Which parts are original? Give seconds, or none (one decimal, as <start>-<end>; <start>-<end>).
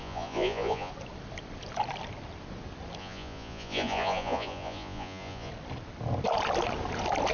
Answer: 0.9-3.0; 5.5-7.3